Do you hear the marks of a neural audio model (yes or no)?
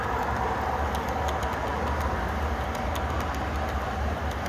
no